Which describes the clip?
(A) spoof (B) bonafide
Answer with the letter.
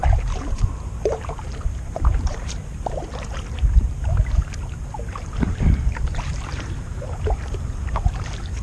A